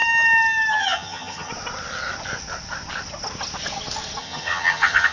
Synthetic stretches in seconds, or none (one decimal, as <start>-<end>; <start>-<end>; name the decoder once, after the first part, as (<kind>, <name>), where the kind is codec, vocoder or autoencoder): 0.7-1.5 (vocoder, HiFi-GAN); 4.2-5.1

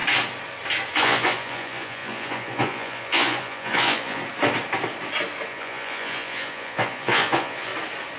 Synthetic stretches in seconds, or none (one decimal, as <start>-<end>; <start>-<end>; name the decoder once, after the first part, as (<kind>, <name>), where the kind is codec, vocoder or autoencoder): 0.9-4.2 (vocoder, Vocos); 5.5-7.7

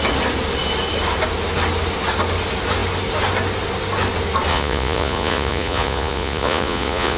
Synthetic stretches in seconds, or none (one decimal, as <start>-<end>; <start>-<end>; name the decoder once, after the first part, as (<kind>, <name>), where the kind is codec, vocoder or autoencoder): 4.5-7.2 (vocoder, Vocos)

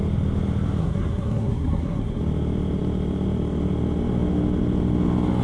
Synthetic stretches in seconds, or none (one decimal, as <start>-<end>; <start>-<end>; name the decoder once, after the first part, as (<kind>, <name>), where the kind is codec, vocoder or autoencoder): 0.8-2.2 (codec, SNAC)

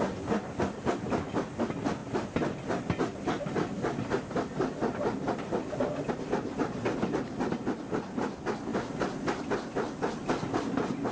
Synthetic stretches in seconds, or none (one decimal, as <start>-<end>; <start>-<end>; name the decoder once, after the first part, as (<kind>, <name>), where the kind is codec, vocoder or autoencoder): none

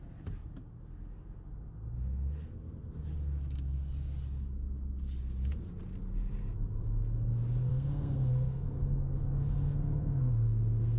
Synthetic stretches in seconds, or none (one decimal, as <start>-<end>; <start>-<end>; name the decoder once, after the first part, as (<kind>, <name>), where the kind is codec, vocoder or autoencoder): 7.7-11.0 (codec, SNAC)

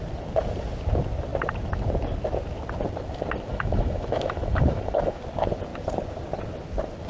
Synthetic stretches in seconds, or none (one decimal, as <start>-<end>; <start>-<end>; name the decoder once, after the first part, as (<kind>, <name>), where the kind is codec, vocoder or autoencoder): 3.5-5.2 (autoencoder, DAC-VAE)

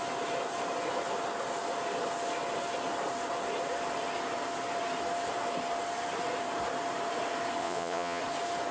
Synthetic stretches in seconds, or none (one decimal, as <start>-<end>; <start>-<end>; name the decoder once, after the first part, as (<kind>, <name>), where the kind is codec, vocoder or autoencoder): 7.6-8.2 (vocoder, Vocos)